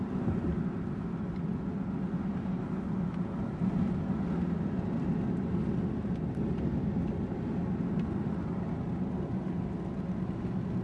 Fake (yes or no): no